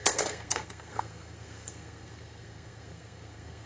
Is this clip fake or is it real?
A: fake